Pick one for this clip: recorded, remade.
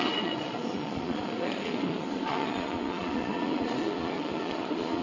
remade